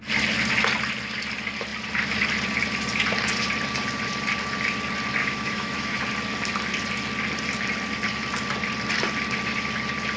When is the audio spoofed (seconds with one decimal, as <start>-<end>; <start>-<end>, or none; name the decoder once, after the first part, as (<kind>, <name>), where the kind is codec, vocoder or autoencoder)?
5.2-6.0 (autoencoder, DAC-VAE)